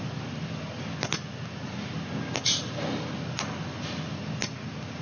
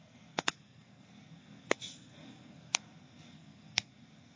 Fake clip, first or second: second